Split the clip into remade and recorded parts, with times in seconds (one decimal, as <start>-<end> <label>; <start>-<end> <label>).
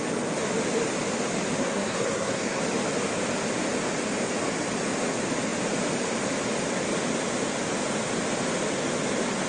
0.0-1.6 recorded; 1.6-2.6 remade; 2.6-9.5 recorded